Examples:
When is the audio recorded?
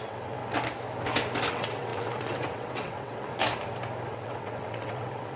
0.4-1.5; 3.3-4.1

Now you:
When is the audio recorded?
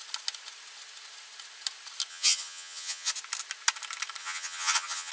0.0-2.1; 3.1-4.2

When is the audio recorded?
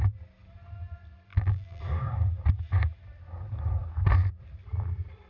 0.0-1.3; 1.8-5.3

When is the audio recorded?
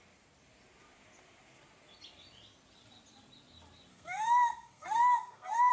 0.0-3.9